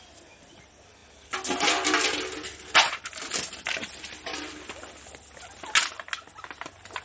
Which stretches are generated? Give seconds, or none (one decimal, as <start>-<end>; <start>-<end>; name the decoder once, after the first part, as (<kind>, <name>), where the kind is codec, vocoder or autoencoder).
none